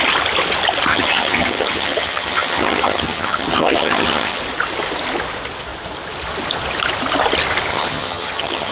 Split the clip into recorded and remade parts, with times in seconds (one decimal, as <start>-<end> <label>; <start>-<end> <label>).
0.0-0.9 recorded; 0.9-4.4 remade; 4.4-7.7 recorded; 7.7-8.7 remade